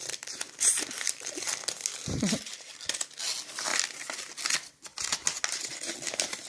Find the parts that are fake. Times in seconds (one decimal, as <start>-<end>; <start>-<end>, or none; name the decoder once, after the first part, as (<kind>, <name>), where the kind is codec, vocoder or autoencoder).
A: none